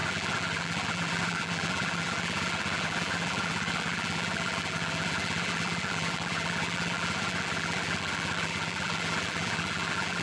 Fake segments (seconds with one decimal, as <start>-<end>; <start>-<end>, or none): 0.0-10.2